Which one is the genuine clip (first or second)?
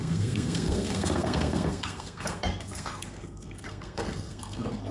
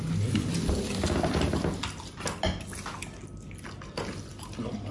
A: second